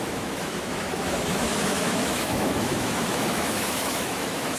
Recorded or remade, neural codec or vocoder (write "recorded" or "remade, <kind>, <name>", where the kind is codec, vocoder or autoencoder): remade, autoencoder, DAC-VAE